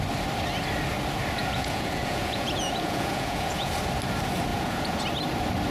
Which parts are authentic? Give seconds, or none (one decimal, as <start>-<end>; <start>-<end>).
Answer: 0.0-1.4; 3.7-4.5; 5.0-5.7